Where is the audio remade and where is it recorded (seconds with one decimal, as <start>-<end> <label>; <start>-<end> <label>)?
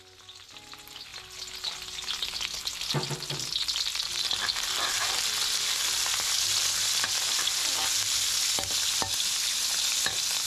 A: 0.0-10.5 recorded